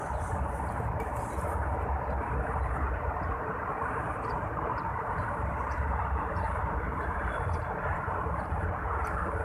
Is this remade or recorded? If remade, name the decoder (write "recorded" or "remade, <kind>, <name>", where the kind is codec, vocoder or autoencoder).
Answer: remade, vocoder, BigVGAN v2